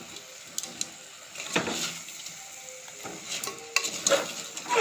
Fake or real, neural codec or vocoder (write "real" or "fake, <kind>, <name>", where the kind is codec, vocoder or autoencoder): real